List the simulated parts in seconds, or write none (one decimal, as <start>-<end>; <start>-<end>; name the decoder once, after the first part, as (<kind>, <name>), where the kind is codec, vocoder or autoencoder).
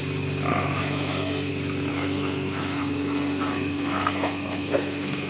0.5-1.5 (codec, SNAC); 1.9-5.3